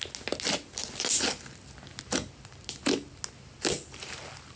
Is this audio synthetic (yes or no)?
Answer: no